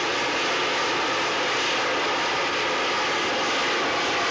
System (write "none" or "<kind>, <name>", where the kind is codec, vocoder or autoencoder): none